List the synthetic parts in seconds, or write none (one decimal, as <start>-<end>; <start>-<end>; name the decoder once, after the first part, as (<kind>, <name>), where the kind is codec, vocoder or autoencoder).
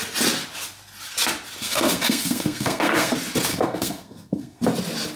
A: 1.6-3.1 (codec, SNAC); 3.5-4.6